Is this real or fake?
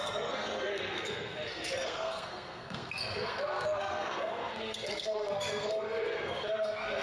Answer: fake